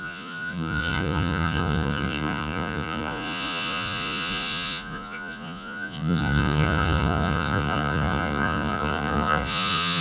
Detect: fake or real fake